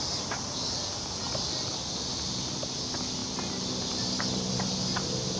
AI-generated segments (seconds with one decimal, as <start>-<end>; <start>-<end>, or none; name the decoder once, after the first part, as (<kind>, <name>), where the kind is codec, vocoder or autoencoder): none

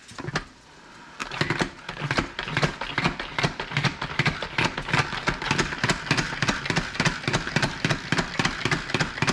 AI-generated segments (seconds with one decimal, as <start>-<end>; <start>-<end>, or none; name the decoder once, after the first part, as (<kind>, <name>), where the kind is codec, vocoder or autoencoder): none

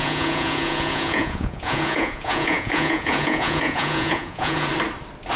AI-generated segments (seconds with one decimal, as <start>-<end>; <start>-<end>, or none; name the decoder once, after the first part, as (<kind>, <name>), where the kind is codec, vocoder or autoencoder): 0.0-4.7 (vocoder, Vocos)